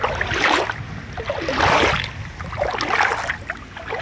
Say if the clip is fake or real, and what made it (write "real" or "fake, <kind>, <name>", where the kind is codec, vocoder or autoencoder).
real